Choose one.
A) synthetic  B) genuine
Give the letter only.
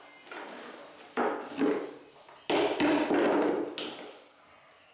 B